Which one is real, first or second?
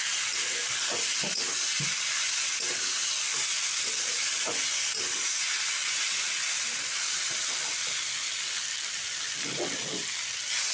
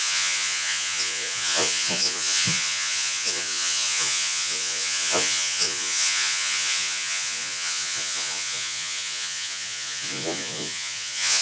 first